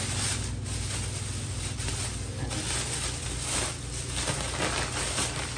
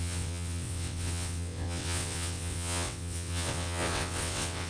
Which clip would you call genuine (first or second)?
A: first